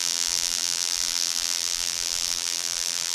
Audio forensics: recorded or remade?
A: remade